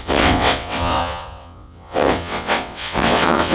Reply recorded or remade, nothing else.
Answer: remade